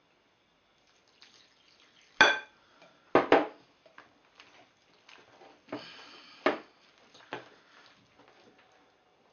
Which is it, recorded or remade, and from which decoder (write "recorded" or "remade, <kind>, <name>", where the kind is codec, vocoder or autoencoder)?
recorded